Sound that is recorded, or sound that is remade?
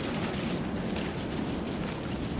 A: recorded